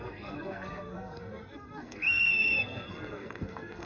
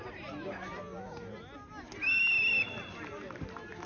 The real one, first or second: second